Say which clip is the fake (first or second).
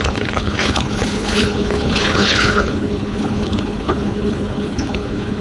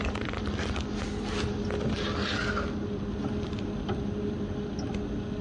first